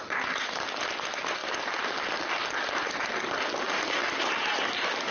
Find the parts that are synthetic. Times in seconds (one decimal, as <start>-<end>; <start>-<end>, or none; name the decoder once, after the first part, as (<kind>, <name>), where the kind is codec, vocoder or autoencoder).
none